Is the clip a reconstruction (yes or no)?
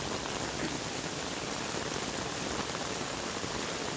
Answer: no